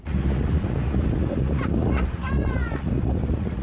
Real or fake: fake